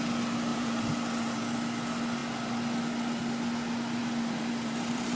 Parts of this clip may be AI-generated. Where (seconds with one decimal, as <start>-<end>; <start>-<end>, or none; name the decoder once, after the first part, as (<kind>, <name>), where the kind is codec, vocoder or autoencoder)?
0.5-1.4 (vocoder, BigVGAN v2); 4.0-5.2

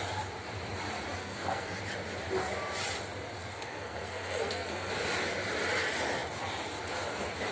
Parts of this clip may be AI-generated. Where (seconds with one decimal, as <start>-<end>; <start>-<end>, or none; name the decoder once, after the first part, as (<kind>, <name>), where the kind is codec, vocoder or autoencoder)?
1.2-1.8 (codec, SNAC); 3.4-4.9

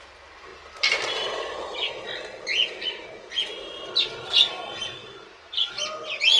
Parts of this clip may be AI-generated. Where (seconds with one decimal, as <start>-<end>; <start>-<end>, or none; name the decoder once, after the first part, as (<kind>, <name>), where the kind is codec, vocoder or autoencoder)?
5.0-5.7 (vocoder, BigVGAN v2)

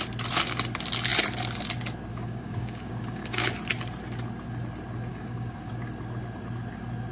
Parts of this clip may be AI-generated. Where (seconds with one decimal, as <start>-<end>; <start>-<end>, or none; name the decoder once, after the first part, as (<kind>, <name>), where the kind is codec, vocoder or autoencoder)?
2.1-3.5 (codec, DAC); 5.1-5.7

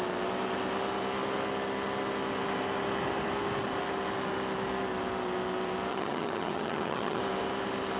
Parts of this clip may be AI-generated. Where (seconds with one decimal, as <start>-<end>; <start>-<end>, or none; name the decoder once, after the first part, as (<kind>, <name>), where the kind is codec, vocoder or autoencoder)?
5.9-7.2 (vocoder, HiFi-GAN)